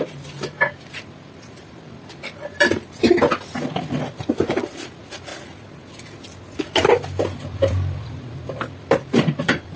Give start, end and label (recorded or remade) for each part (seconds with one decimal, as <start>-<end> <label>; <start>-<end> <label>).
0.0-5.3 remade; 5.3-7.4 recorded; 7.4-9.8 remade